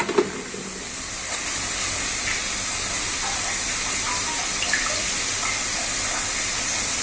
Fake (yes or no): no